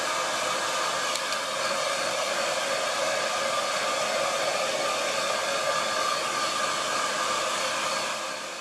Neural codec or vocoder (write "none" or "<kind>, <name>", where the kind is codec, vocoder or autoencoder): none